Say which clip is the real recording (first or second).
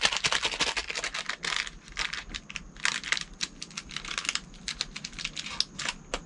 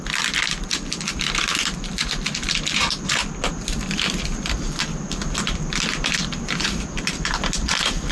first